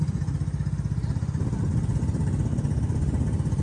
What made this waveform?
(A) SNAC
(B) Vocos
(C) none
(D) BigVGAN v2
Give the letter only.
C